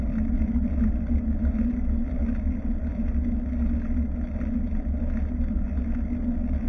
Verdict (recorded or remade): recorded